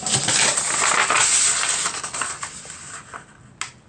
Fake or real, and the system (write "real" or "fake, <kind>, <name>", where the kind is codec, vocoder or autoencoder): real